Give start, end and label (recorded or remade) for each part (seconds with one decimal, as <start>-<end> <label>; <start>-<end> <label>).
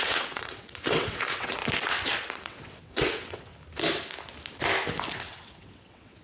0.0-1.6 remade; 1.6-2.3 recorded; 2.3-3.5 remade; 3.5-5.1 recorded; 5.1-6.2 remade